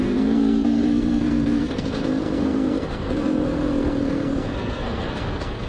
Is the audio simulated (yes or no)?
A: yes